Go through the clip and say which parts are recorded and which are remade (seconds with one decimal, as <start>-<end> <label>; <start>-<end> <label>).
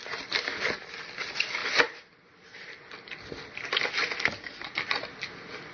0.0-5.7 recorded